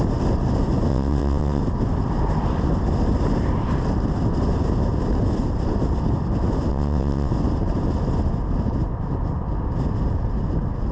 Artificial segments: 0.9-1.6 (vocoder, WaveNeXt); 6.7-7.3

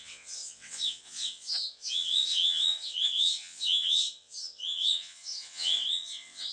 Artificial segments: 0.0-6.5 (vocoder, WaveNeXt)

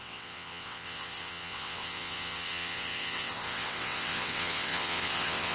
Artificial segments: 0.0-5.5 (vocoder, WaveNeXt)